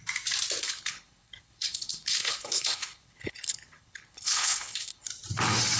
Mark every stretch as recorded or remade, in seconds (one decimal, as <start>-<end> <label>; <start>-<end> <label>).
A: 0.0-0.6 recorded; 0.6-5.1 remade; 5.1-5.8 recorded